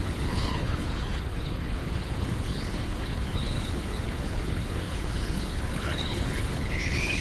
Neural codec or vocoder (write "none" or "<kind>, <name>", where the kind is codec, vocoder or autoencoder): codec, HILCodec